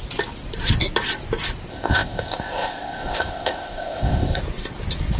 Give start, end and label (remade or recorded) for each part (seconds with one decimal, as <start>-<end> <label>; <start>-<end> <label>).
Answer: 0.0-1.7 recorded; 1.7-4.4 remade; 4.4-5.2 recorded